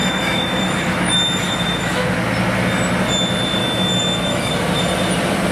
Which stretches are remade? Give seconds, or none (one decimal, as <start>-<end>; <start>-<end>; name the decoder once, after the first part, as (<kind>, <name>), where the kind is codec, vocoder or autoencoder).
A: 0.0-2.1 (autoencoder, DAC-VAE); 3.6-4.5